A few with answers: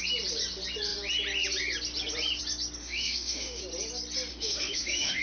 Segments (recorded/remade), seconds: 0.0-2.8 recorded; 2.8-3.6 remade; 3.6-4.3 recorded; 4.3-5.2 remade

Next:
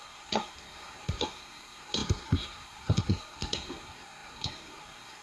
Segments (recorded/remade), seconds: 0.0-5.2 remade

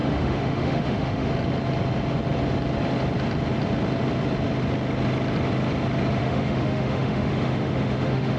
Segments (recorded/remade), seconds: 0.0-1.3 remade; 1.3-6.2 recorded; 6.2-8.4 remade